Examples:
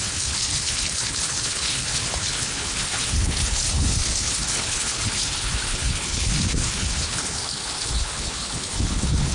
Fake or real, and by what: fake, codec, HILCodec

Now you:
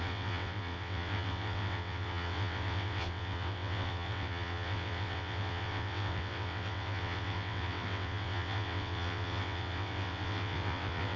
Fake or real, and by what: fake, vocoder, WaveNeXt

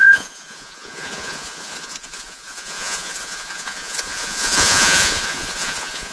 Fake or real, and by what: fake, vocoder, Vocos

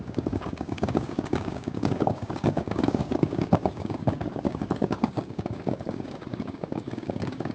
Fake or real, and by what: fake, codec, DAC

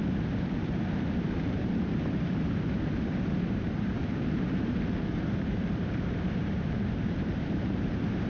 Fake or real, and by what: fake, vocoder, BigVGAN v2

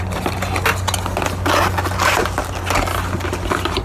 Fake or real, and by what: real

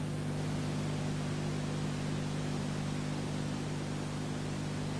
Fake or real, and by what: real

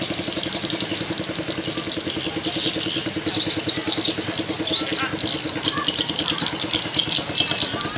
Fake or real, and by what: real